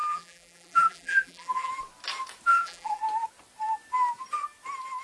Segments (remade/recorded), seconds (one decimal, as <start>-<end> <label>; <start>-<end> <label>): 0.0-1.7 remade; 1.7-2.5 recorded; 2.5-3.0 remade; 3.0-5.0 recorded